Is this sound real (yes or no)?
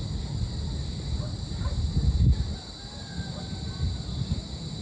yes